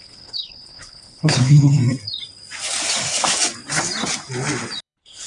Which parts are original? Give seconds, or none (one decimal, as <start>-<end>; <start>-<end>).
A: 1.8-4.8

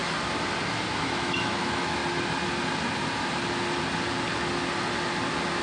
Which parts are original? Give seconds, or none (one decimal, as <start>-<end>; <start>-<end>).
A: 0.0-1.0; 2.0-5.6

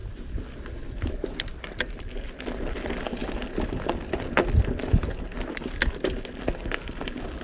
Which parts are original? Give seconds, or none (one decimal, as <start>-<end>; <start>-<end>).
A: 0.0-7.4

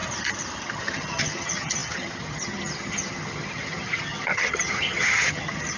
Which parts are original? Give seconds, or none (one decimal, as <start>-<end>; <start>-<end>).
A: 0.0-0.6